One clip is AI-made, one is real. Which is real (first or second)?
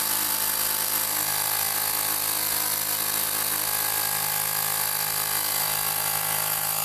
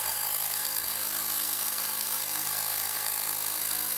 first